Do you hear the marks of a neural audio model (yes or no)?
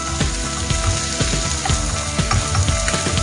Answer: no